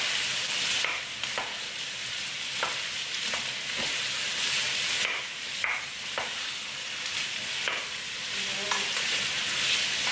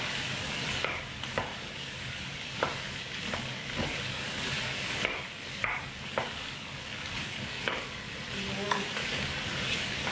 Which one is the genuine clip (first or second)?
first